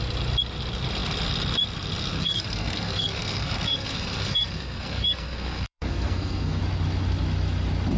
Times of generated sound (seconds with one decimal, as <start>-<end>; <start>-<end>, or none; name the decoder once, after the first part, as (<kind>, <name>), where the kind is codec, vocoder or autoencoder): 2.1-6.6 (codec, SNAC)